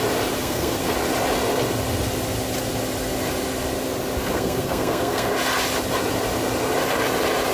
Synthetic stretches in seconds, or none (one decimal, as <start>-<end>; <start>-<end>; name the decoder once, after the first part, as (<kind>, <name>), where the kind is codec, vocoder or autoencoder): 0.4-0.9 (codec, SNAC); 4.2-5.3